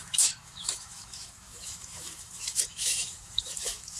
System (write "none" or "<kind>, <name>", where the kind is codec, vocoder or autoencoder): autoencoder, DAC-VAE